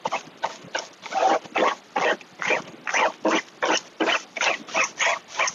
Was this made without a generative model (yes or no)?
yes